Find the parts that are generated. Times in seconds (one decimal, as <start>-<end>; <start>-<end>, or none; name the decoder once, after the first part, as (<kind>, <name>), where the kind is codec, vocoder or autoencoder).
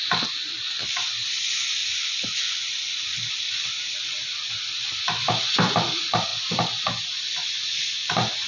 1.8-4.5 (vocoder, BigVGAN v2); 6.3-7.3